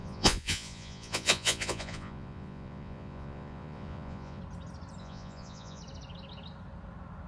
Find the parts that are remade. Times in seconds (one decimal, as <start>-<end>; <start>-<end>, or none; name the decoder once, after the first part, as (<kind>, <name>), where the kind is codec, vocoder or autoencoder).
0.0-4.4 (vocoder, Vocos); 5.0-5.8